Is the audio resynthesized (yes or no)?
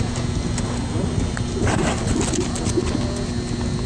no